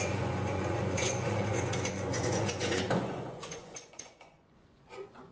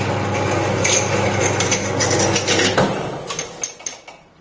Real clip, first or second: second